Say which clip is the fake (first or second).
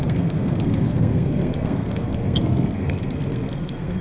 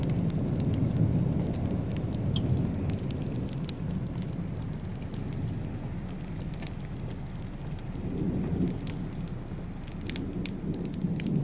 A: first